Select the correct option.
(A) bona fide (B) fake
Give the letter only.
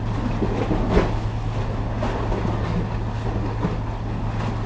A